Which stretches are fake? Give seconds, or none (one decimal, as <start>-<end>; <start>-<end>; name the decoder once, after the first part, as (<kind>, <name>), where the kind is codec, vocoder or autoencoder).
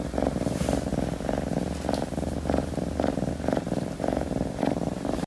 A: 0.0-0.9 (vocoder, BigVGAN v2); 3.3-5.3